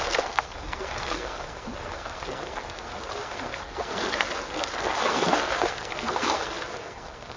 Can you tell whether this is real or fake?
fake